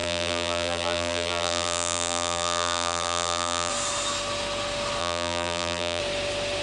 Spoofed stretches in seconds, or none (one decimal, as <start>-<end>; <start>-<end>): 0.0-3.7; 5.0-6.0